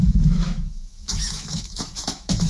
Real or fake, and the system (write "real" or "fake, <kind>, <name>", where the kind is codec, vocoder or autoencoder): fake, autoencoder, DAC-VAE